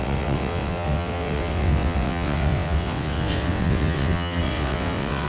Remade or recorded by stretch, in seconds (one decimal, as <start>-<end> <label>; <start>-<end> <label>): 0.0-5.3 remade